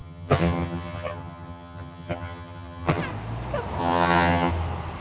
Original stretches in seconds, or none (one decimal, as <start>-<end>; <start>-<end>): 3.0-3.8; 4.5-5.0

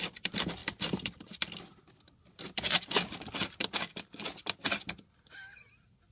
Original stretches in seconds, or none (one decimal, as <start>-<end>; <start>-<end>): 0.0-6.1

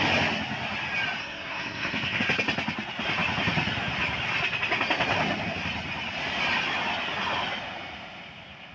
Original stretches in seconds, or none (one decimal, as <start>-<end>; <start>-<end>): 0.0-1.2; 2.2-8.7

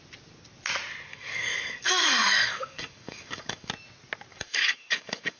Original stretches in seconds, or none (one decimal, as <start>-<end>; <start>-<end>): 0.0-1.1; 3.7-4.3

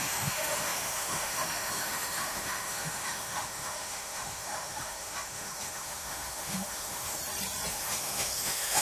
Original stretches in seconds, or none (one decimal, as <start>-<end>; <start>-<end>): 7.2-7.7

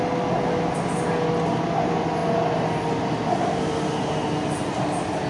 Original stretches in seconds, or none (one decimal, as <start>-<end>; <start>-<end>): 0.0-5.3

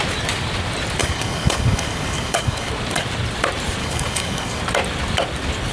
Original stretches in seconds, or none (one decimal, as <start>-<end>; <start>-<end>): 0.0-1.0; 2.7-3.8; 4.6-5.7